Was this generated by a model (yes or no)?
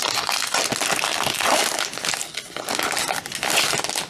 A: no